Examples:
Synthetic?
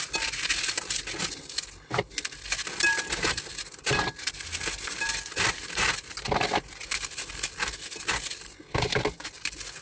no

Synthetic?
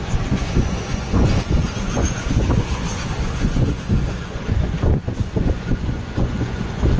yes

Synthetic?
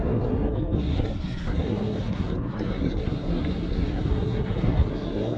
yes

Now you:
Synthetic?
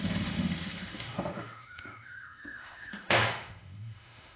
yes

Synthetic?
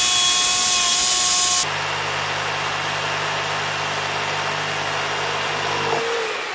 no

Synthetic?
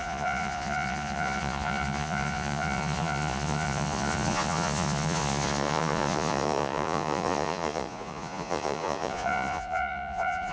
yes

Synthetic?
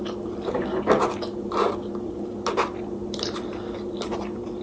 no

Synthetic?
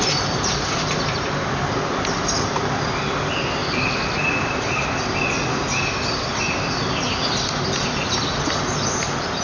no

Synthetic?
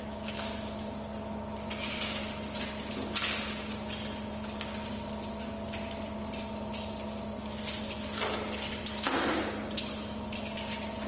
no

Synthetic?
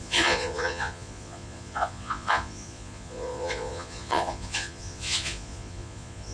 yes